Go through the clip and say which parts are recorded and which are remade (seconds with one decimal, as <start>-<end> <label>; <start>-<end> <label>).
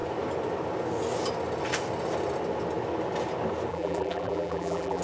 0.0-3.7 recorded; 3.7-5.0 remade